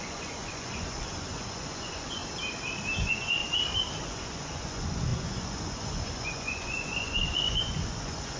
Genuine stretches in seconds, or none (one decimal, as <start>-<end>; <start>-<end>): 2.2-3.0; 3.4-4.0